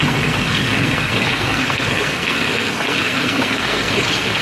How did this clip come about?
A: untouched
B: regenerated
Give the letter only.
B